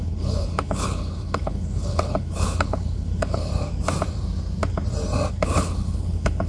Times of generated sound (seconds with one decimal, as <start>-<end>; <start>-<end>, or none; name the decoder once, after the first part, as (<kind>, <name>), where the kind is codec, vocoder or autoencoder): 0.0-3.5 (codec, HILCodec); 5.3-6.5